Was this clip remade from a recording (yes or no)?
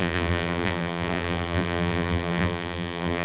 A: yes